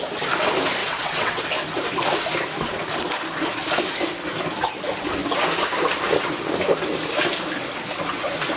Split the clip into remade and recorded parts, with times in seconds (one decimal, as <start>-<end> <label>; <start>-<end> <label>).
0.0-0.8 recorded; 0.8-1.4 remade; 1.4-8.6 recorded